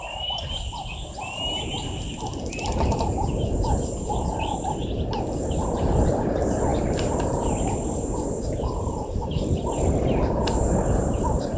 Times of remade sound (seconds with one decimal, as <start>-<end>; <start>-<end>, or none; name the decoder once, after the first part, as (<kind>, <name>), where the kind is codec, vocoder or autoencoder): none